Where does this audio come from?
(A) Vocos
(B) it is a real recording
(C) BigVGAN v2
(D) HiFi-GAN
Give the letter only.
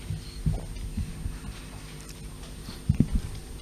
B